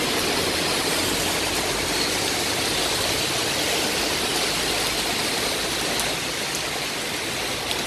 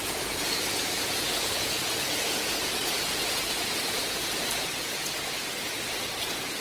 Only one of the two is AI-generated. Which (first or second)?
second